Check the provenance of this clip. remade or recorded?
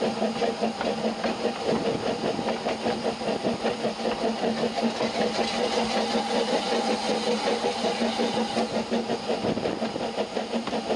recorded